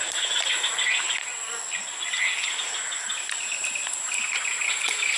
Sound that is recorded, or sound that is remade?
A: recorded